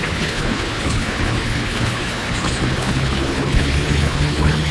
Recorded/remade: remade